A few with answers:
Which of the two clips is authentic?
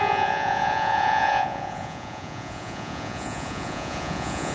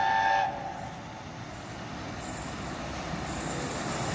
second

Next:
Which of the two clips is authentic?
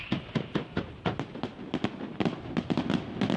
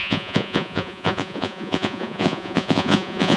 first